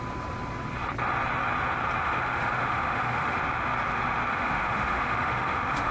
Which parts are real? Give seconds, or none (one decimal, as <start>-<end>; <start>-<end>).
0.0-2.0; 3.4-4.3